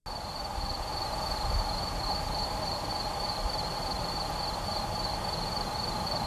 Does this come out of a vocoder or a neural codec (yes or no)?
no